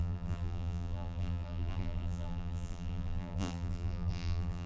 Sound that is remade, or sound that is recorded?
remade